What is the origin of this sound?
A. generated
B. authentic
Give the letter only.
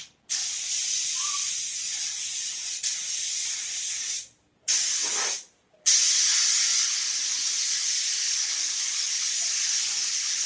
B